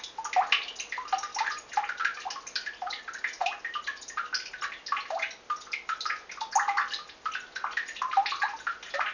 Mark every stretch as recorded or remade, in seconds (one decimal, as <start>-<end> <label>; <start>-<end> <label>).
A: 0.0-9.1 recorded